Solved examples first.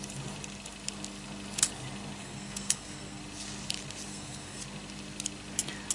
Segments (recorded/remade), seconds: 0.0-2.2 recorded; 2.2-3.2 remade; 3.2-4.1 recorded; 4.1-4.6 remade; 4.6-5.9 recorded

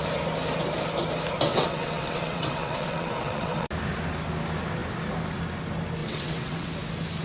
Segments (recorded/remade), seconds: 0.0-1.5 recorded; 1.5-3.7 remade; 3.7-6.0 recorded; 6.0-6.7 remade; 6.7-7.2 recorded

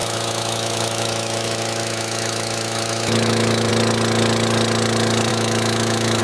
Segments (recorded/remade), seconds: 0.0-3.7 remade; 3.7-5.3 recorded; 5.3-6.2 remade

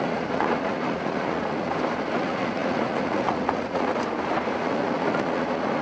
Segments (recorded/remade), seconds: 0.0-1.7 remade; 1.7-2.2 recorded; 2.2-3.9 remade; 3.9-4.6 recorded; 4.6-5.8 remade

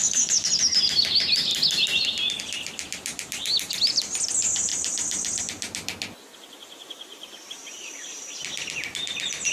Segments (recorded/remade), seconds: 0.0-0.5 remade; 0.5-9.5 recorded